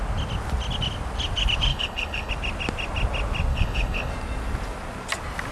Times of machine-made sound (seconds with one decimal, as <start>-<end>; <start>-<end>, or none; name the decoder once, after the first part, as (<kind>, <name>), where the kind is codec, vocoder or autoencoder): 1.7-2.3 (codec, HILCodec); 3.5-4.1